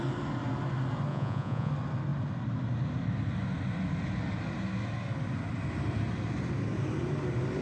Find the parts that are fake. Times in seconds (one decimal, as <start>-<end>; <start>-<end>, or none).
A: 1.1-1.7